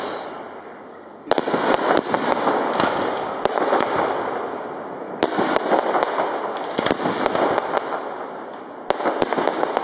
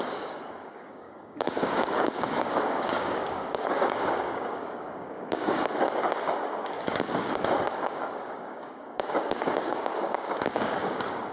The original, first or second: first